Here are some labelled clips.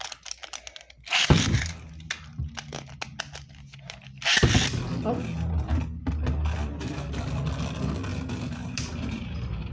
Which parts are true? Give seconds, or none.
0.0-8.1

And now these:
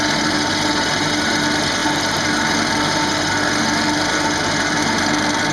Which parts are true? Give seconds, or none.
0.0-5.5

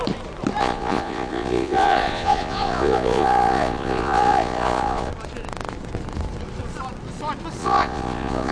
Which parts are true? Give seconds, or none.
0.0-0.6; 5.1-7.6

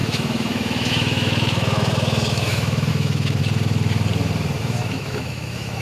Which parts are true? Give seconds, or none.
3.4-4.6

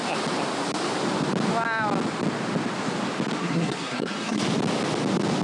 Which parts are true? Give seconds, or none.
0.0-3.4; 4.4-5.4

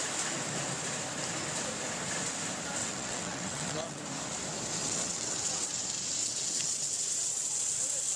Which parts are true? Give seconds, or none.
0.0-2.8; 4.0-4.8; 5.7-6.2; 7.5-8.2

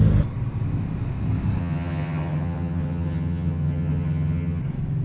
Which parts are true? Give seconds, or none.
0.0-1.6; 4.6-5.0